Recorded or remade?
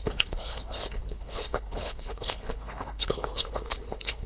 remade